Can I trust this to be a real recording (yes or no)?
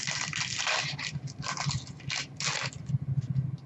yes